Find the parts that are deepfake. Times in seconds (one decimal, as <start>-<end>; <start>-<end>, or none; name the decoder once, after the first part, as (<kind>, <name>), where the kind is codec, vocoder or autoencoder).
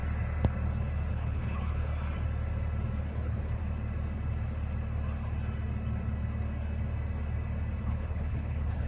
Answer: 1.1-1.9 (codec, HILCodec); 3.0-3.6; 7.8-8.9